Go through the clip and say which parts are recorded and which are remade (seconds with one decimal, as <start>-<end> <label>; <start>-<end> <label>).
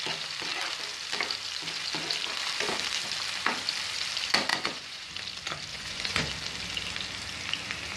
0.0-4.5 recorded; 4.5-5.1 remade; 5.1-5.7 recorded; 5.7-6.3 remade; 6.3-8.0 recorded